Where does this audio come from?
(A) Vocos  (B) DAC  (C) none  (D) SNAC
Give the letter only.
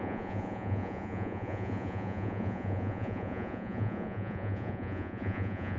A